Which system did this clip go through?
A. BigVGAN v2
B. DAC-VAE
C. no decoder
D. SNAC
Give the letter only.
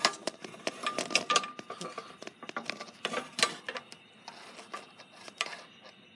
C